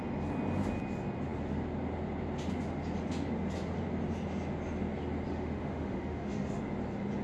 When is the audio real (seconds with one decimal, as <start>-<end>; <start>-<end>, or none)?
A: 0.0-5.3; 6.6-7.2